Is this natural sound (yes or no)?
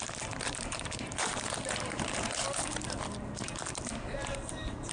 no